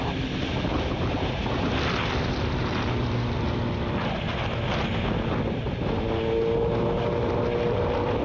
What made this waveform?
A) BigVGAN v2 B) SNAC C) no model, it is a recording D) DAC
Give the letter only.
C